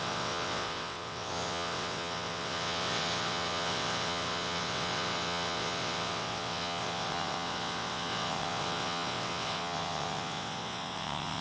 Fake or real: fake